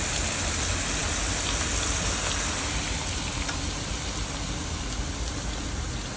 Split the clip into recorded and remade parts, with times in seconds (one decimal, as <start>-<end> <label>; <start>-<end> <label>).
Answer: 0.0-6.2 recorded